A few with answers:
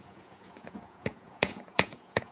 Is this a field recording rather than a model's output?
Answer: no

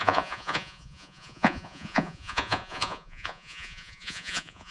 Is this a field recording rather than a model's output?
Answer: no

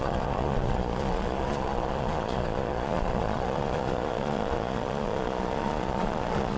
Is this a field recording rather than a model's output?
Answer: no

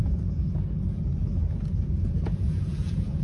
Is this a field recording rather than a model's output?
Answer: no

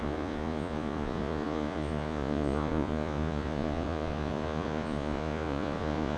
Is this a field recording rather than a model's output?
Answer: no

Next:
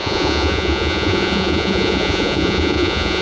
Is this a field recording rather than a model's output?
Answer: no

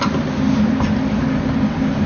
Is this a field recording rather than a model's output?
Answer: yes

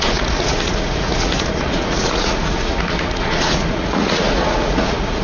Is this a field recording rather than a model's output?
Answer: no